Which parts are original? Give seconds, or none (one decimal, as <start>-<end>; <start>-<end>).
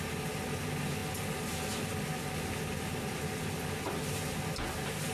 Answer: 0.0-5.1